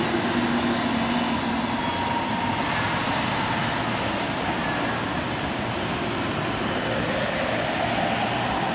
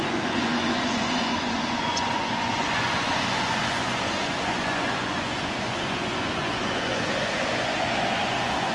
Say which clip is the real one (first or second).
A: first